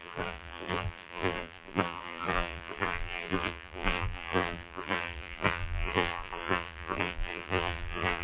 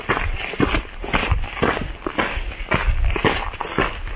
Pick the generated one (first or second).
first